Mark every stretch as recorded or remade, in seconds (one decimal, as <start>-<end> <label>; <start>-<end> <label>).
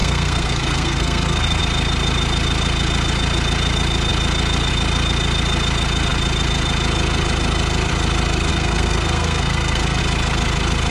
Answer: 0.0-1.6 remade; 1.6-8.5 recorded; 8.5-10.0 remade; 10.0-10.9 recorded